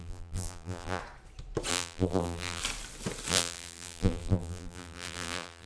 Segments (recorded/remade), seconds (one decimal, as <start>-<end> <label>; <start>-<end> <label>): 0.0-1.0 remade; 1.0-1.7 recorded; 1.7-2.6 remade; 2.6-3.3 recorded; 3.3-5.7 remade

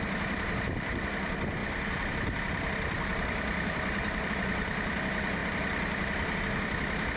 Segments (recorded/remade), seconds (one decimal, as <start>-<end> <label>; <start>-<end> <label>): 0.0-1.6 recorded; 1.6-4.3 remade; 4.3-5.4 recorded; 5.4-6.4 remade; 6.4-7.2 recorded

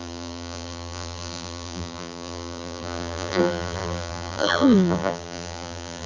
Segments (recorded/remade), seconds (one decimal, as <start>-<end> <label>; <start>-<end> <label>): 0.0-6.1 remade

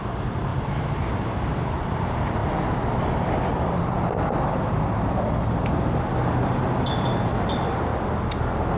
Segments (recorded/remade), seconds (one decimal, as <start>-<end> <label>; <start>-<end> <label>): 0.0-2.4 remade; 2.4-5.5 recorded; 5.5-7.9 remade; 7.9-8.8 recorded

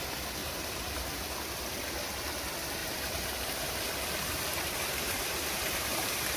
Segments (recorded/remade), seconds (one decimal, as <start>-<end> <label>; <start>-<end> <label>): 0.0-0.4 recorded; 0.4-1.2 remade; 1.2-2.8 recorded; 2.8-6.4 remade

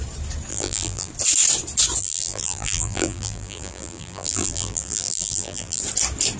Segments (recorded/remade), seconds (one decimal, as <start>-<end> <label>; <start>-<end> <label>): 0.0-0.5 recorded; 0.5-1.1 remade; 1.1-2.0 recorded; 2.0-5.8 remade; 5.8-6.4 recorded

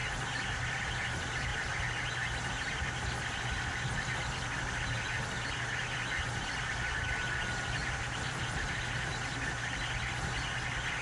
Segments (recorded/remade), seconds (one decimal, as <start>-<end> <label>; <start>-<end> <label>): 0.0-7.8 recorded; 7.8-8.8 remade; 8.8-11.0 recorded

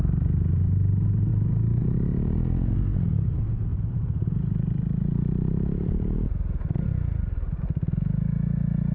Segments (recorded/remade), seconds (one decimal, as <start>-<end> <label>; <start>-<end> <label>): 0.0-3.7 recorded; 3.7-7.6 remade; 7.6-8.9 recorded